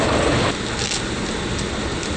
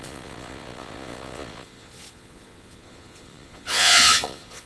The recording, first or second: first